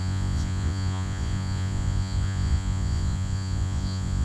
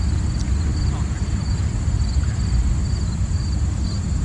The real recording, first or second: second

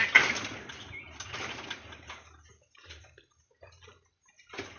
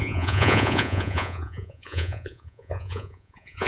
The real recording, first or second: first